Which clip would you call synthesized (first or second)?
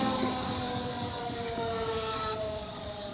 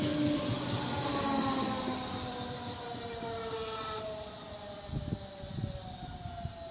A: first